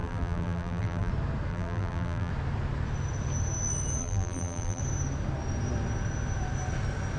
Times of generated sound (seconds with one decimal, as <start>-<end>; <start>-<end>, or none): 0.0-1.1; 1.5-2.3; 4.0-4.8